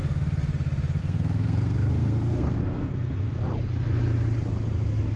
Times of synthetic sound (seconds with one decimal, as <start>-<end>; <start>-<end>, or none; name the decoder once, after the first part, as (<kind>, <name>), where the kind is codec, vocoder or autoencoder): 1.0-3.4 (codec, SNAC)